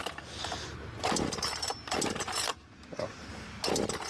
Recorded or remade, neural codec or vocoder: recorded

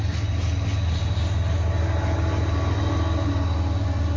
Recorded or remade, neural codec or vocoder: recorded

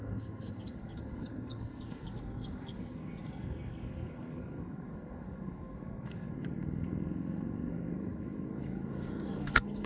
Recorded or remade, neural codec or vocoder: remade, codec, SNAC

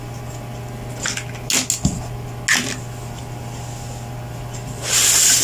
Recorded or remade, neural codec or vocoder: recorded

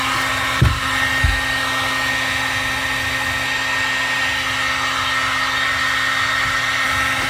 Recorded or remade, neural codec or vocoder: recorded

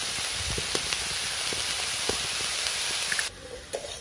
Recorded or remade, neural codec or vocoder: recorded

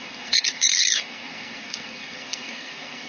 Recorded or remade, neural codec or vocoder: remade, codec, SNAC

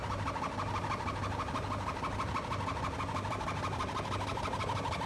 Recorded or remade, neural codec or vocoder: recorded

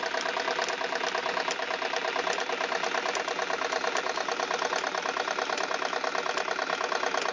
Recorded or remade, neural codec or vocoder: recorded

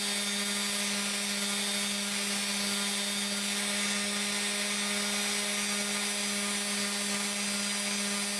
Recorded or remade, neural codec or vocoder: recorded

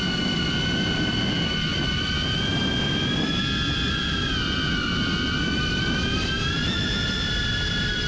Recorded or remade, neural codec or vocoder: recorded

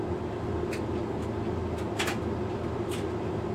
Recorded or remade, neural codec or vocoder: recorded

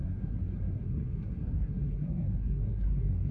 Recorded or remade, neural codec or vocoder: remade, codec, SNAC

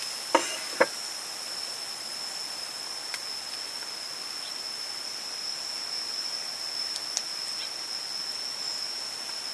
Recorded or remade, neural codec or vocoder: recorded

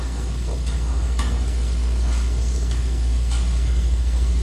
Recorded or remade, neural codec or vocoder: remade, codec, SNAC